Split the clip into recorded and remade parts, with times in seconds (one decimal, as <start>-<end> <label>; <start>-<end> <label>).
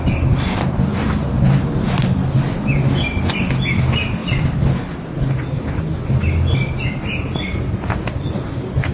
0.0-8.9 recorded